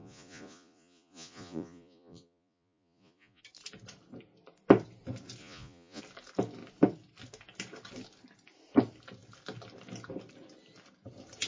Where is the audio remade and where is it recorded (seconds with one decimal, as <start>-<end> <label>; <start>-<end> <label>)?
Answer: 0.0-3.4 remade; 3.4-5.4 recorded; 5.4-6.0 remade; 6.0-11.5 recorded